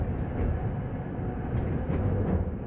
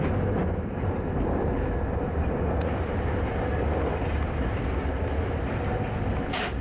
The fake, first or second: second